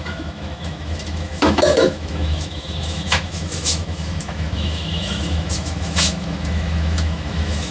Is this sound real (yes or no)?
no